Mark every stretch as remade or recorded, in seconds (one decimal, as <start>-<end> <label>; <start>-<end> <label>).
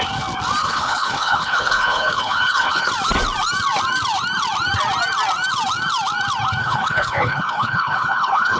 0.0-0.6 recorded; 0.6-2.9 remade; 2.9-6.6 recorded; 6.6-8.6 remade